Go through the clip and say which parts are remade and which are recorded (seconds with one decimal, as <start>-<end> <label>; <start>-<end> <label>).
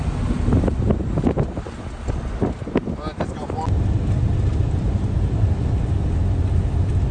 0.0-7.1 recorded